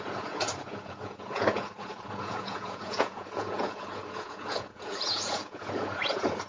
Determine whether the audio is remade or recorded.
remade